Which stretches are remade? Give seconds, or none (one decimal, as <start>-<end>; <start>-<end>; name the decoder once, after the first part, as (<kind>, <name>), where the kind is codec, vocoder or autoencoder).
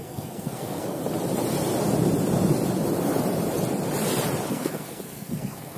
0.0-1.0 (codec, SNAC); 4.5-5.8